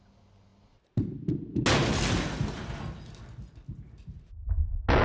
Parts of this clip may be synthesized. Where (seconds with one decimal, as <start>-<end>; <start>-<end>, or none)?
none